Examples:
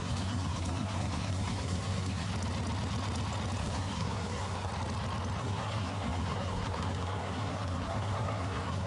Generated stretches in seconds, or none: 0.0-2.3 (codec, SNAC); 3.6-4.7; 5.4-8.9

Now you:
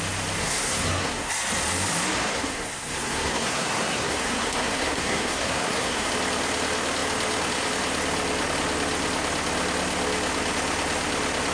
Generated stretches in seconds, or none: 0.4-1.3 (codec, SNAC); 2.3-6.1

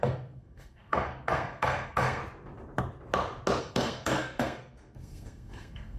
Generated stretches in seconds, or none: 0.0-2.2 (codec, SNAC); 3.6-6.0

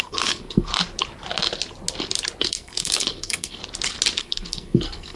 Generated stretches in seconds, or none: 0.0-0.7 (codec, SNAC); 2.4-3.6; 4.2-5.2